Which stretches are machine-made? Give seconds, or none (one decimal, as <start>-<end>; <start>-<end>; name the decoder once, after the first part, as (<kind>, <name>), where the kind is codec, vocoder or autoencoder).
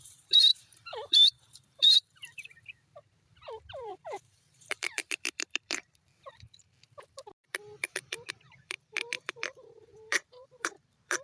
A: 0.0-11.2 (vocoder, BigVGAN v2)